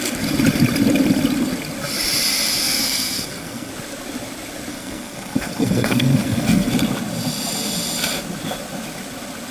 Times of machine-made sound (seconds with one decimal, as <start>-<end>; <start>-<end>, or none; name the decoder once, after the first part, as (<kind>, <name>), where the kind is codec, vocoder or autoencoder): 2.6-3.7 (codec, SNAC); 4.7-6.7